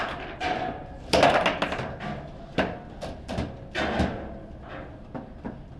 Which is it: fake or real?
real